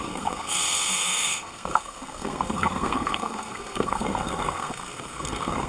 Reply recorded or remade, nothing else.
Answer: remade